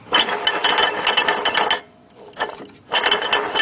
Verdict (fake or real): real